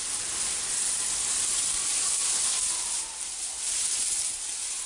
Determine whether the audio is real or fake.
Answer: real